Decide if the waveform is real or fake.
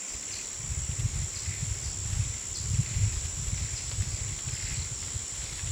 real